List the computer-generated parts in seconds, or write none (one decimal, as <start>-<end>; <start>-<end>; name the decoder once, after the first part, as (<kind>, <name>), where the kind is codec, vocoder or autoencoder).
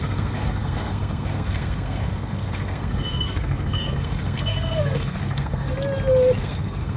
0.0-5.7 (codec, SNAC); 6.4-7.0